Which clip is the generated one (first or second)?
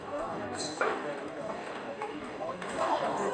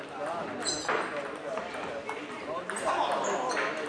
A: first